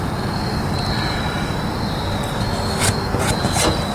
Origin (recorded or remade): recorded